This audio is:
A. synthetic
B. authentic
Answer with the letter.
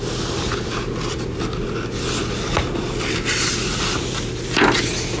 B